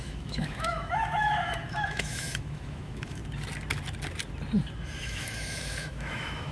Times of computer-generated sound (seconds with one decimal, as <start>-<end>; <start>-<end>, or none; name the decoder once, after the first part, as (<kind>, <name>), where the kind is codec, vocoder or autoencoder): 0.0-3.2 (autoencoder, DAC-VAE); 5.0-6.5